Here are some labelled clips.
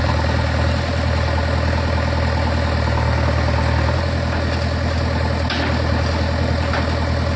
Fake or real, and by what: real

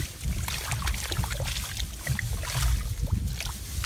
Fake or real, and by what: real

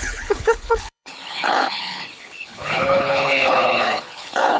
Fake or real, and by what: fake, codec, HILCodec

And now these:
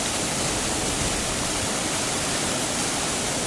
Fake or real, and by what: real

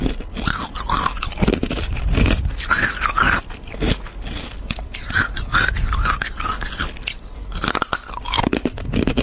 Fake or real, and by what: real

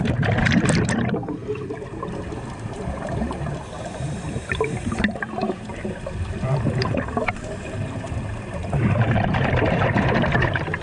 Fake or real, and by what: fake, vocoder, BigVGAN v2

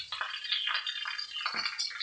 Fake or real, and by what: real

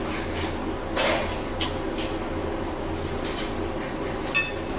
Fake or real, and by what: real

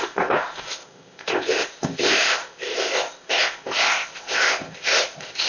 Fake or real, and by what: fake, codec, ZipCodec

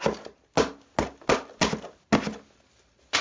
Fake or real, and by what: real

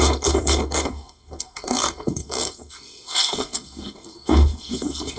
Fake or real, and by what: fake, codec, SNAC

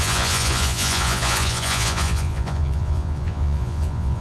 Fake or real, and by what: fake, vocoder, Vocos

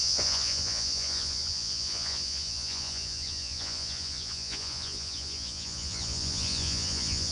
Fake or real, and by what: fake, vocoder, Vocos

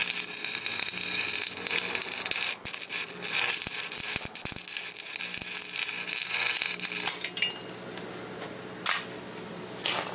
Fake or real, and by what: real